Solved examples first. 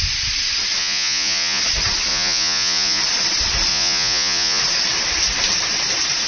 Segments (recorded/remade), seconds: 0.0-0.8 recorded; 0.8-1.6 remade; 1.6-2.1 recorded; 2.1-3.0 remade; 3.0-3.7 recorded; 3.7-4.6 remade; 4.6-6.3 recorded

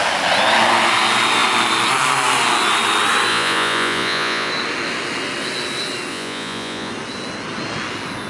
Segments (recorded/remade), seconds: 0.0-3.3 recorded; 3.3-4.5 remade; 4.5-6.1 recorded; 6.1-6.9 remade; 6.9-8.3 recorded

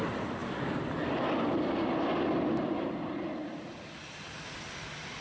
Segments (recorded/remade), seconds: 0.0-5.2 recorded

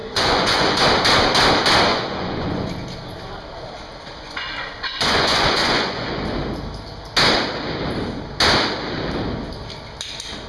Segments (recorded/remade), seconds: 0.0-0.8 remade; 0.8-1.9 recorded; 1.9-2.7 remade; 2.7-4.1 recorded; 4.1-6.4 remade; 6.4-10.5 recorded

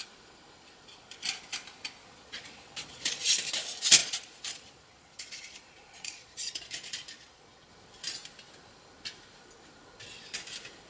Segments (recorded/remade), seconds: 0.0-2.0 recorded; 2.0-3.3 remade; 3.3-4.0 recorded; 4.0-7.7 remade; 7.7-10.9 recorded

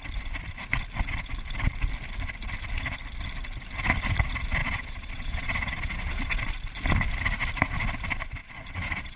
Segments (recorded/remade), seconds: 0.0-4.6 recorded; 4.6-6.4 remade; 6.4-8.4 recorded; 8.4-9.2 remade

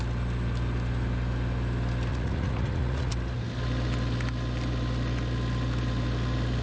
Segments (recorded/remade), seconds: 0.0-2.1 recorded; 2.1-3.1 remade; 3.1-6.6 recorded